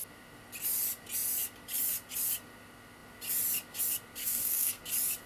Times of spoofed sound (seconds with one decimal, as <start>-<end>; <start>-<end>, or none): 4.2-4.8